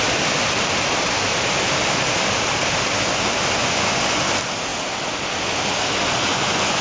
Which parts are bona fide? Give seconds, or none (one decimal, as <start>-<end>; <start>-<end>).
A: 0.0-3.6; 4.3-6.3